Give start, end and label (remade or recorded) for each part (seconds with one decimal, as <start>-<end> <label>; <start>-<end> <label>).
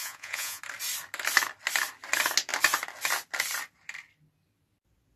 0.0-0.6 remade; 0.6-5.2 recorded